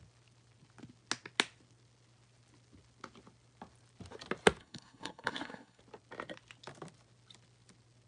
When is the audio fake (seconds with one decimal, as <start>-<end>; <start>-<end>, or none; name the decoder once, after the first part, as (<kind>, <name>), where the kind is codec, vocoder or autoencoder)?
4.6-5.8 (codec, SNAC)